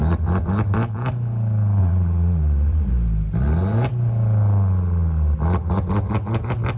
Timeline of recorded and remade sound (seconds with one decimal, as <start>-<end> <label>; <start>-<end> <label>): 0.0-1.8 recorded; 1.8-2.9 remade; 2.9-6.8 recorded